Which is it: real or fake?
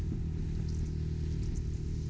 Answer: real